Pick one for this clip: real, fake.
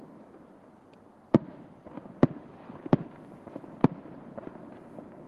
real